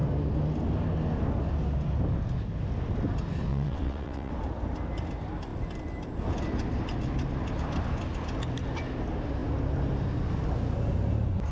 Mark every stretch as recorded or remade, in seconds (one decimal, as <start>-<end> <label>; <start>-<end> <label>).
0.0-3.5 recorded; 3.5-4.3 remade; 4.3-11.5 recorded